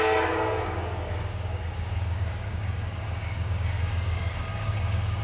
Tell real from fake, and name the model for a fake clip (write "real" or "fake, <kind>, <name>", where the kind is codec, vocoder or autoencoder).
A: fake, codec, DAC